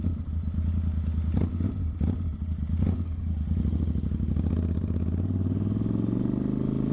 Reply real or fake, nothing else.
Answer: real